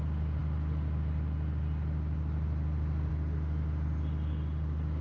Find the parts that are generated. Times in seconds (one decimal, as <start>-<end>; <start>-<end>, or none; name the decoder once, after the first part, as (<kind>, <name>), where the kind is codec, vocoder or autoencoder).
none